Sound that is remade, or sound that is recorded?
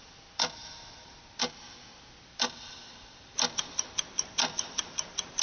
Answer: remade